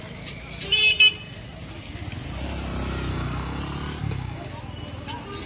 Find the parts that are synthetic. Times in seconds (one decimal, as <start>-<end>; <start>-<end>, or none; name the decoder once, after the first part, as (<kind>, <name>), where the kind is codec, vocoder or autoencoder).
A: 3.1-3.6 (codec, DAC); 4.0-4.5